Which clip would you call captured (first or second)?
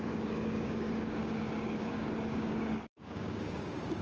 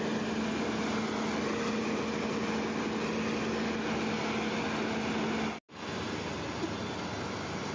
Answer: second